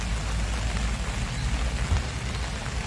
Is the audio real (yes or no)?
yes